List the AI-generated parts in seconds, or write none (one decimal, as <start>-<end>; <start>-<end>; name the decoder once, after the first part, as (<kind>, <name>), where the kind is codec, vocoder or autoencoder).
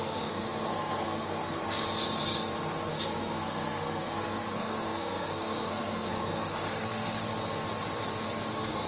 0.0-1.6 (codec, SNAC); 2.9-7.2; 8.5-8.9